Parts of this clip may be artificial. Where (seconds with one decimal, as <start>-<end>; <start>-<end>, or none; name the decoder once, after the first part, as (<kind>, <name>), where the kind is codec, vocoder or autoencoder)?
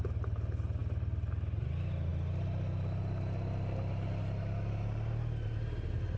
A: none